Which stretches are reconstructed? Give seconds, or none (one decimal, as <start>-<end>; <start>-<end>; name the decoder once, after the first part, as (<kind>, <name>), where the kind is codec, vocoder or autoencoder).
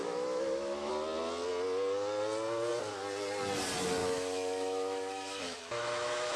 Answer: 0.0-0.9 (autoencoder, DAC-VAE); 4.0-6.4